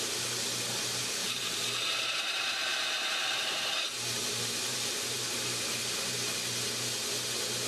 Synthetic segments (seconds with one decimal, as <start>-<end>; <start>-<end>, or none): 1.2-5.8